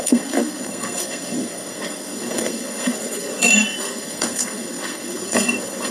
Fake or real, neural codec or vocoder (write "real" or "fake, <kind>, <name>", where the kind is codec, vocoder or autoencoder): fake, codec, SNAC